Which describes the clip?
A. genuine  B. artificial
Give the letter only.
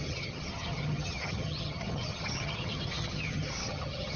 B